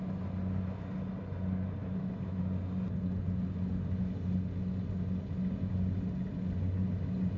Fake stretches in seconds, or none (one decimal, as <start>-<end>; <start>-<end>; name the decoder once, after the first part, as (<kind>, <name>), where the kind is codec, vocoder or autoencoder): 1.8-2.4 (autoencoder, DAC-VAE)